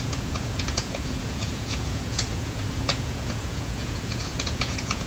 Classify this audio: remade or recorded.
remade